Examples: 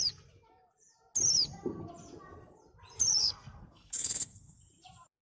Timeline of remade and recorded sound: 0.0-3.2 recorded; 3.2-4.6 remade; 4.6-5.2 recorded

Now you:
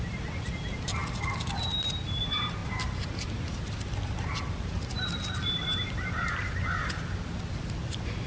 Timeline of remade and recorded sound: 0.0-8.3 recorded